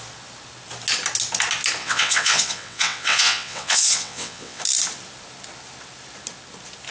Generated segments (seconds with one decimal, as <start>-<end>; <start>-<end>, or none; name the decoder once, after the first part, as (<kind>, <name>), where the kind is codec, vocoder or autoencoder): 1.8-4.6 (vocoder, WaveNeXt)